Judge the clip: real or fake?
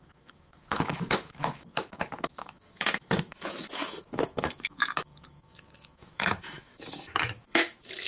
fake